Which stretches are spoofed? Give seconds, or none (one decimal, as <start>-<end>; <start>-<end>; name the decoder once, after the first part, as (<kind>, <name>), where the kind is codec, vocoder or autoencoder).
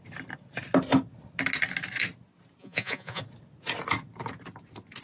2.6-3.2 (vocoder, Vocos)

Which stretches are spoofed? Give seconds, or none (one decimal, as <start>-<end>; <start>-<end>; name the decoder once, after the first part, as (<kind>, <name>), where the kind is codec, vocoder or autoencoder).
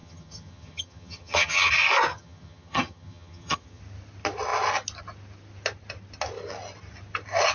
0.0-1.7 (vocoder, HiFi-GAN); 2.1-3.8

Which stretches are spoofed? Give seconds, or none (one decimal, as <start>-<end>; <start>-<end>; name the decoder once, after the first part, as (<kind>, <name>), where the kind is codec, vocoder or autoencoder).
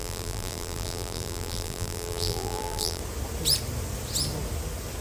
0.0-3.0 (vocoder, BigVGAN v2)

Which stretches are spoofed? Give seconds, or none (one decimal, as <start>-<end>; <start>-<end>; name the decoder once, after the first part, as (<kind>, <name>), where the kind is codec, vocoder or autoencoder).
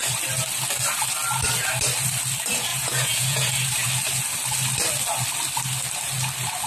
2.7-3.5 (vocoder, Vocos)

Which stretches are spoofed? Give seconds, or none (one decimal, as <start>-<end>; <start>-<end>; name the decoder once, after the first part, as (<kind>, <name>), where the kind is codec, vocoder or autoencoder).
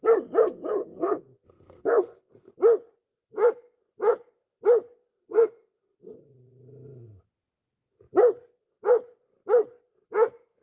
0.8-2.5 (codec, SNAC); 5.1-6.1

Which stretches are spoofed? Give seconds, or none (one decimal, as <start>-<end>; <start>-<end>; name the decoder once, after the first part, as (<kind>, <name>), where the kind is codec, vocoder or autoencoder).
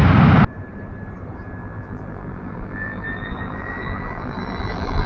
1.6-5.1 (vocoder, BigVGAN v2)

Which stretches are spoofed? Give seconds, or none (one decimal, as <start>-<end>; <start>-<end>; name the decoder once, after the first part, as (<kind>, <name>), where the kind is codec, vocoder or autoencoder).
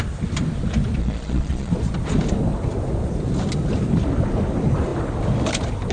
1.0-1.7 (vocoder, Vocos)